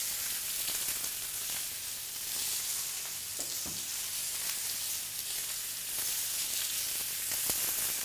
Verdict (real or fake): real